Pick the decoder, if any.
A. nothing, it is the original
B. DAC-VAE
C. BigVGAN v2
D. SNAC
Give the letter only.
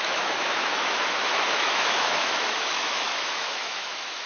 B